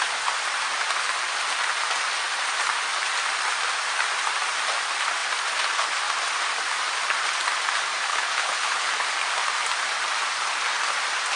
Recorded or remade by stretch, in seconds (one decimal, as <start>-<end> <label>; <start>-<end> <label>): 0.0-8.1 recorded; 8.1-8.9 remade; 8.9-11.4 recorded